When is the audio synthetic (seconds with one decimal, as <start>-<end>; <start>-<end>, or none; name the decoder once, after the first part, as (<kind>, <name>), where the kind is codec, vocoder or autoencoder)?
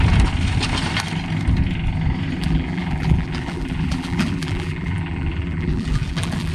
2.4-6.5 (vocoder, BigVGAN v2)